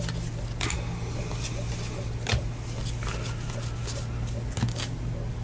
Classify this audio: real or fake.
real